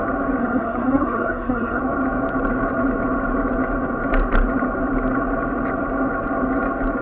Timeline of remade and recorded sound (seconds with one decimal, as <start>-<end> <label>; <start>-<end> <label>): 0.0-0.4 recorded; 0.4-1.8 remade; 1.8-7.0 recorded